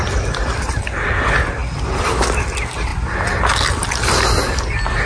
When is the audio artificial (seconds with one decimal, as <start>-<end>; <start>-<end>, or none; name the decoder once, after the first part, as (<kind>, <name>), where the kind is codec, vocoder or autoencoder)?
none